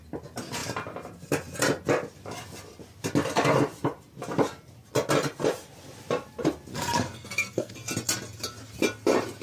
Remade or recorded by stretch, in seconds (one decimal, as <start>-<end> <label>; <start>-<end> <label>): 0.0-6.7 recorded; 6.7-7.7 remade; 7.7-9.4 recorded